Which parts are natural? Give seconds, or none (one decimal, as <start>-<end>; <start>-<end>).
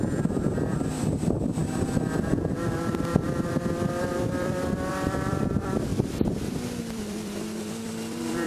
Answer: 5.9-6.8